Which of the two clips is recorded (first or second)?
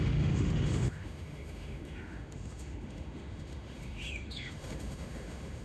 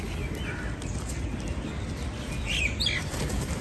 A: second